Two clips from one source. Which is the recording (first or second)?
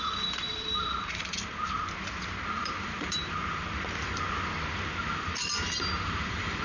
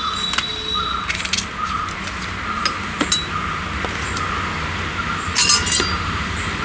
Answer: second